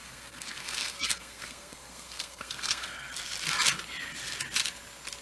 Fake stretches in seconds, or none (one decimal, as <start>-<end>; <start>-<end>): 0.0-3.1